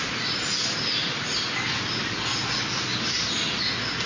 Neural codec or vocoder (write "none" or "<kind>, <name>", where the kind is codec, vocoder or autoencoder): none